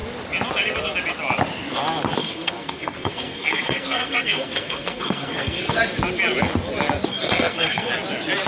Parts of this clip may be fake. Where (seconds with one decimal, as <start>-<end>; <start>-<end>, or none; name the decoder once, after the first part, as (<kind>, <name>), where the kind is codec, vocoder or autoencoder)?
2.2-5.8 (codec, SNAC); 7.1-7.9